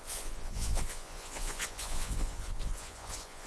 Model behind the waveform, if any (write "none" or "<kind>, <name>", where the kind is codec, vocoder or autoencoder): vocoder, Vocos